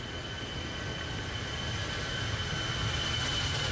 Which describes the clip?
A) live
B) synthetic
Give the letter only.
A